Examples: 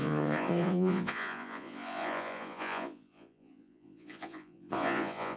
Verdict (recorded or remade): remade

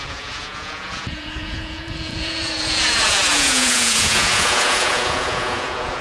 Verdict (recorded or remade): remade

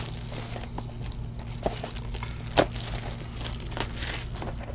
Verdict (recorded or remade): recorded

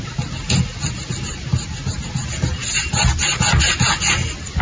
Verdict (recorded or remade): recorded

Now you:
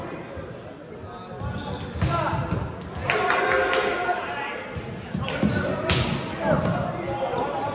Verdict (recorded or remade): recorded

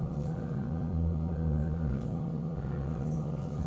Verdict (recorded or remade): remade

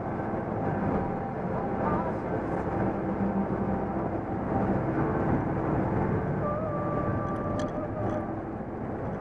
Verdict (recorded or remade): recorded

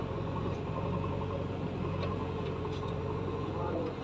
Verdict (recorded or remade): remade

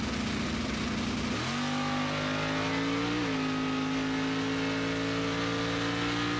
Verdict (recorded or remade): recorded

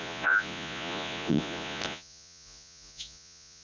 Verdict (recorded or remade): remade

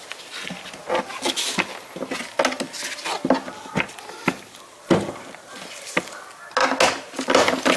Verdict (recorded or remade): recorded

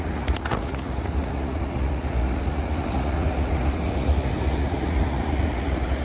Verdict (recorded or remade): remade